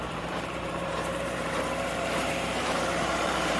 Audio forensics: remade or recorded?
remade